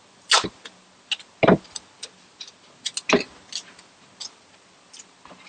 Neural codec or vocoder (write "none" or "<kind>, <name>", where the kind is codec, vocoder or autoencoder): none